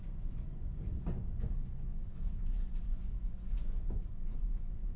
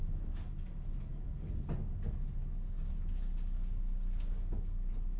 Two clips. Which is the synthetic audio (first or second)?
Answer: first